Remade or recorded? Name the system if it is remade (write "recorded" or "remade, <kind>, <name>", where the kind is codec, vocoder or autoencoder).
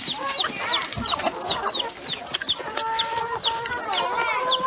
recorded